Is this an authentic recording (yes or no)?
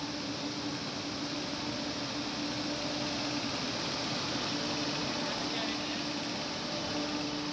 yes